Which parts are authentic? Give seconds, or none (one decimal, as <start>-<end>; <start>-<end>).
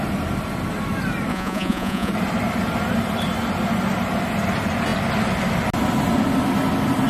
0.0-1.3; 2.1-7.1